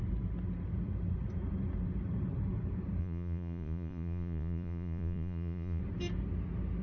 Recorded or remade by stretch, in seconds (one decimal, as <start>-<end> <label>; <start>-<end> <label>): 0.0-3.0 recorded; 3.0-5.8 remade; 5.8-6.8 recorded